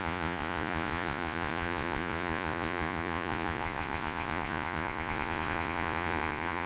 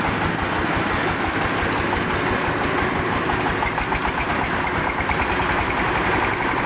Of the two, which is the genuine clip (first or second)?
second